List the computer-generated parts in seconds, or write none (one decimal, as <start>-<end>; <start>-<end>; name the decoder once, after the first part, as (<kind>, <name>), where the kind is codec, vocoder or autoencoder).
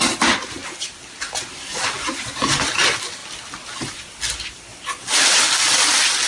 none